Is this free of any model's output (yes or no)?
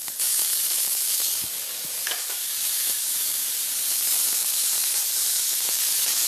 no